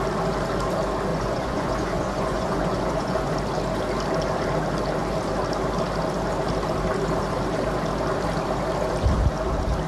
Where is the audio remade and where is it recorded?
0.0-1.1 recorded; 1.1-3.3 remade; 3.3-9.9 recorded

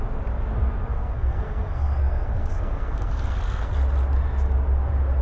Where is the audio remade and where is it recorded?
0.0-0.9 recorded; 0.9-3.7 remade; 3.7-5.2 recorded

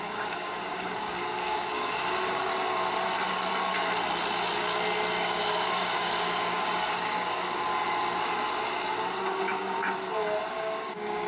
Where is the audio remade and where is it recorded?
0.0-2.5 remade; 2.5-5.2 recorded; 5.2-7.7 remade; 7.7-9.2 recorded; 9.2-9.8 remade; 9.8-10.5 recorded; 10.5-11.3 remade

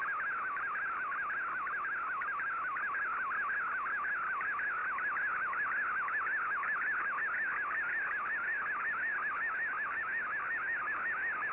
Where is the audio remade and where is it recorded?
0.0-11.5 recorded

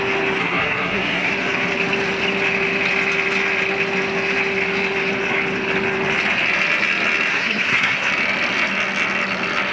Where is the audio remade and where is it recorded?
0.0-0.4 recorded; 0.4-1.3 remade; 1.3-7.3 recorded; 7.3-8.1 remade; 8.1-9.7 recorded